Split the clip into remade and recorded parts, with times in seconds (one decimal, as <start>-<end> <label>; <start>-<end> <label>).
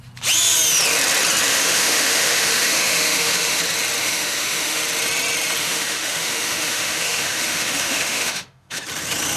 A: 0.0-1.5 recorded; 1.5-3.6 remade; 3.6-4.0 recorded; 4.0-4.8 remade; 4.8-5.6 recorded; 5.6-8.8 remade; 8.8-9.4 recorded